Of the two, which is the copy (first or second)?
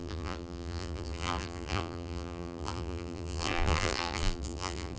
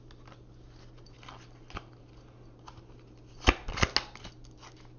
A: first